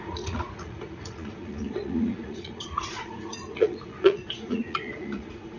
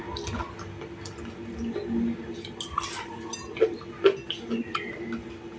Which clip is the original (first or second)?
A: second